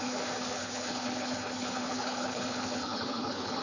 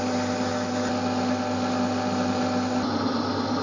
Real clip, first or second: second